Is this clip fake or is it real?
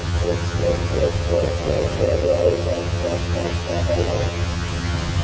fake